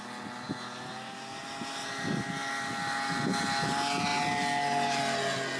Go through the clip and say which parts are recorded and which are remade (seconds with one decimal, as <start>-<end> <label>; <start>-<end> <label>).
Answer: 0.0-5.6 recorded